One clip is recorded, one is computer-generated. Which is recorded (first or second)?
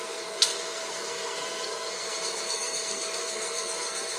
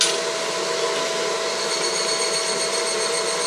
second